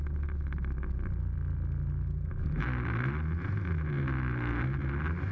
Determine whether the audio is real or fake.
real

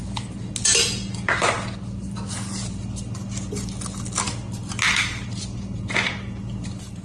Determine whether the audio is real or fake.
real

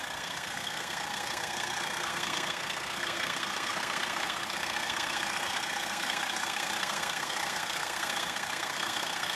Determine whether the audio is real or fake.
fake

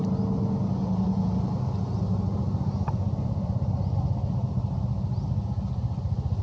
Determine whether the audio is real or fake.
real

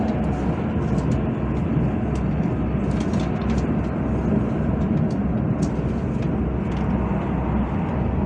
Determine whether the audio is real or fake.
real